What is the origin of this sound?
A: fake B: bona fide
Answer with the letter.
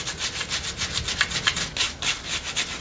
B